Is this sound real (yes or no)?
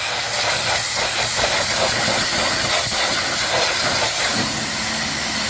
yes